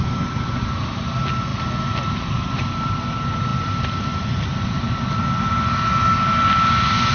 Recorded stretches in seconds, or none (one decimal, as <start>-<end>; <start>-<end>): 0.0-1.5; 3.0-3.5; 5.5-7.1